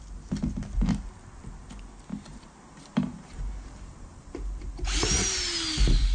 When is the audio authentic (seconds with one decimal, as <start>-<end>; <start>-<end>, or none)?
0.0-2.1; 4.6-6.1